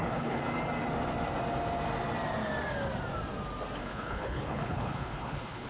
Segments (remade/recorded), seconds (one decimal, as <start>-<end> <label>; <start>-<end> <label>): 0.0-0.4 remade; 0.4-3.8 recorded; 3.8-5.7 remade